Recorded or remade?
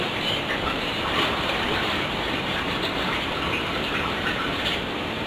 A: remade